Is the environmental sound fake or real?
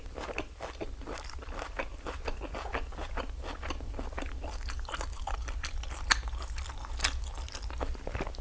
real